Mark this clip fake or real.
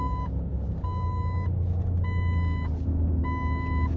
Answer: real